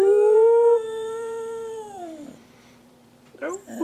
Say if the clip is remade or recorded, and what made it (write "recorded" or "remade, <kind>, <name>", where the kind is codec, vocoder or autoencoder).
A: remade, vocoder, BigVGAN v2